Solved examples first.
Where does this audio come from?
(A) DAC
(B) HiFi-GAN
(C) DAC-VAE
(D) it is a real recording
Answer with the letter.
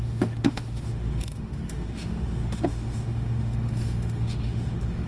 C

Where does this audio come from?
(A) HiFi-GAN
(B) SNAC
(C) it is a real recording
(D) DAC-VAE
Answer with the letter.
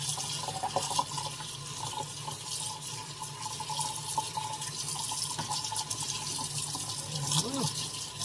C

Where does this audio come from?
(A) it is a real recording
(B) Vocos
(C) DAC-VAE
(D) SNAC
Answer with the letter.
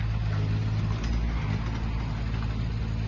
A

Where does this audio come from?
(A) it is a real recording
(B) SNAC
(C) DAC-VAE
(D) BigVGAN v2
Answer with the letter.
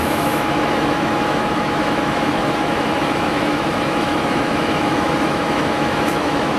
C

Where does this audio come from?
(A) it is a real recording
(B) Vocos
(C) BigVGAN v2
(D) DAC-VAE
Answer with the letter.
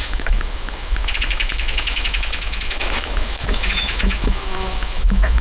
D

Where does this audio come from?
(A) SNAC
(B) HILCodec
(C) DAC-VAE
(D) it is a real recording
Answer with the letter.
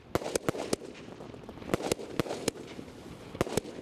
D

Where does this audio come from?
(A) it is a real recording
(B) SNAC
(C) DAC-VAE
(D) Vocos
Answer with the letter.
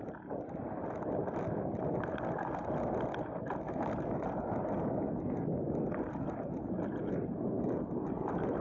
A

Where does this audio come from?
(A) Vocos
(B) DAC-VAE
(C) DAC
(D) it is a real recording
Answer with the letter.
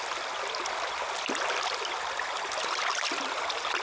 D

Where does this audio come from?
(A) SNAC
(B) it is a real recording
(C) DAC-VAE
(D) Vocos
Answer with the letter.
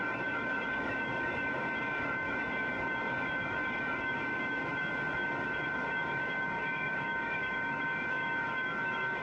C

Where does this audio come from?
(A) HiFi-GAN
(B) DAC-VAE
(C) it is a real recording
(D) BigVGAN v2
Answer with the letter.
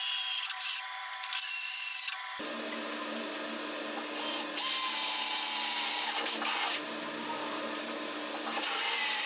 C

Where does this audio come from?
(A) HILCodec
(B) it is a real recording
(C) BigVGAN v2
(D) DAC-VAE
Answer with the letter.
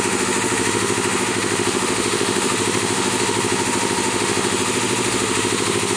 D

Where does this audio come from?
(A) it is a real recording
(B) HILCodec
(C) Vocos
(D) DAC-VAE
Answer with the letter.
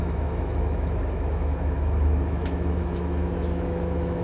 D